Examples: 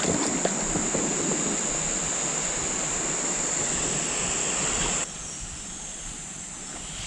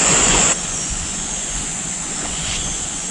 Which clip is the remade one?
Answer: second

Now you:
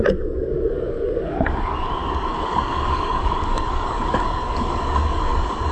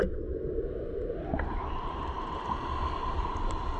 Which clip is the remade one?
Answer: first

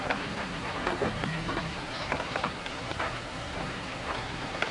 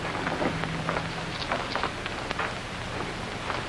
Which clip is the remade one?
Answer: first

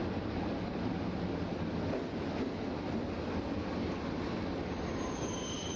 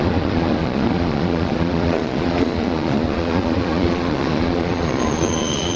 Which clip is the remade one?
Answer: second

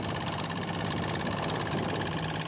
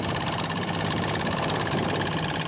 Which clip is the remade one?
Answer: second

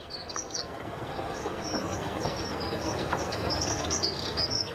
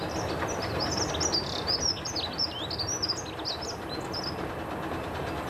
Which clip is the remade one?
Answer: first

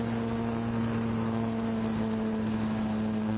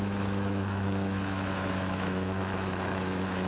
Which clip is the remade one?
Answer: second